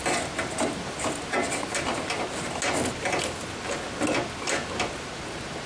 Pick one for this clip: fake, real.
real